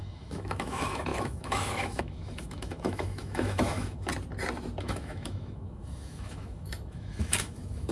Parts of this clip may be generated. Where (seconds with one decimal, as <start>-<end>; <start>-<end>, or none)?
0.0-4.1; 4.8-7.9